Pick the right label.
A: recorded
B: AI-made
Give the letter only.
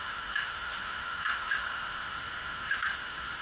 B